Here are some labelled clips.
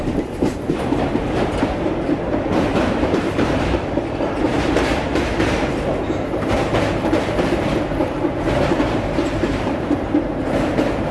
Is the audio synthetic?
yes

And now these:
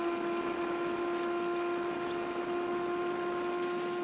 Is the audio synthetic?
no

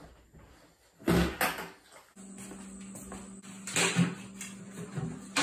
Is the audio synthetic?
no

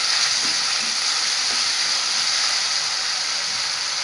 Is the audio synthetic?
no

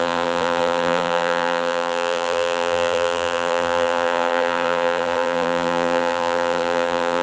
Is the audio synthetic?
yes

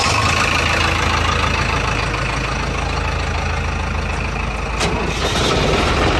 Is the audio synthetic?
no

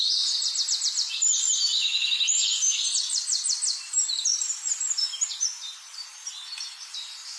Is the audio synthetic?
yes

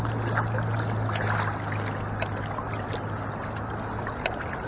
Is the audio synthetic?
no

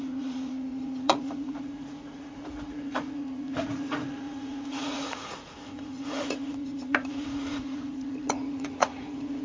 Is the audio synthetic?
yes